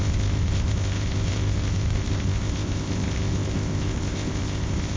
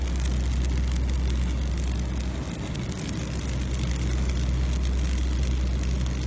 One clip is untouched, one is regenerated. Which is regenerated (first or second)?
first